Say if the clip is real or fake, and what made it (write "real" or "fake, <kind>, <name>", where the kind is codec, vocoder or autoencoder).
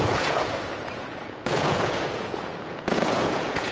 fake, vocoder, Vocos